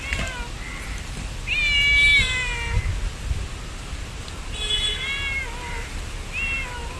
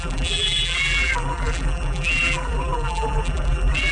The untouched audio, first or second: first